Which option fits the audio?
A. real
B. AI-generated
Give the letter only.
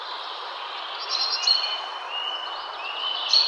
A